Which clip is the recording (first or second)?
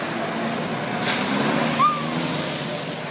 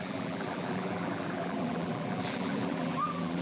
first